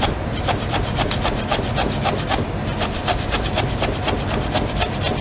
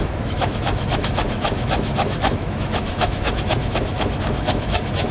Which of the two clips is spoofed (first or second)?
second